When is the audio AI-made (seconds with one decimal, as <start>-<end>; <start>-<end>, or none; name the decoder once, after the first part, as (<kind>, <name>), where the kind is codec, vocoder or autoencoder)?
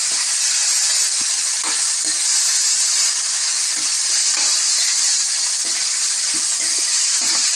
0.0-7.6 (vocoder, BigVGAN v2)